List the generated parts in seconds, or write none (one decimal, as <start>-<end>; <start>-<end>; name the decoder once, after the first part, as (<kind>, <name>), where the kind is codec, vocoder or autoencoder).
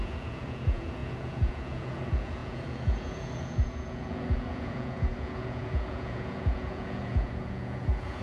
0.0-8.2 (vocoder, Vocos)